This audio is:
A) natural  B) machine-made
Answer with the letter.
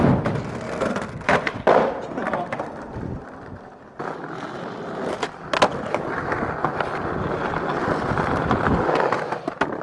A